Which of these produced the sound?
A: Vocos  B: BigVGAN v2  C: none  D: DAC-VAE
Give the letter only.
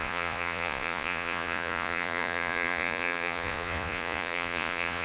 A